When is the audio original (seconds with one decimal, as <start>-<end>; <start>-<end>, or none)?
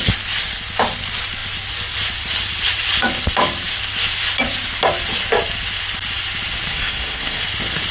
0.0-6.7; 7.4-7.9